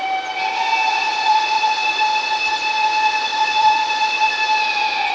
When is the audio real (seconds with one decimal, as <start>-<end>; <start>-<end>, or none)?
0.0-0.9; 4.4-5.1